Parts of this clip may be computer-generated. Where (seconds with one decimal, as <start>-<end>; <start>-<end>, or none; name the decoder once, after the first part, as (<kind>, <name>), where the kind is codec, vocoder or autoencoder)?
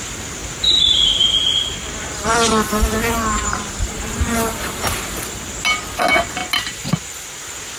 0.4-5.0 (vocoder, BigVGAN v2)